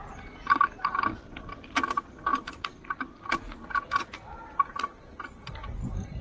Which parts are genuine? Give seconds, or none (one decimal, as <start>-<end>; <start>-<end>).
0.0-6.2